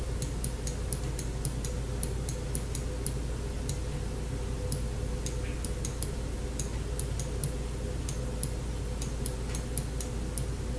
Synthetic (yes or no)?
no